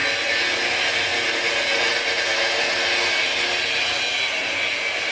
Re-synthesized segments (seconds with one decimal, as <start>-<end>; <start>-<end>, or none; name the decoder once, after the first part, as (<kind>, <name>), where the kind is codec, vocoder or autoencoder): none